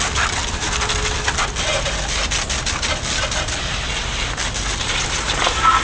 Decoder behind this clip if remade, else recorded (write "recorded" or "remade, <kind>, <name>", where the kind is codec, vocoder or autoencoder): recorded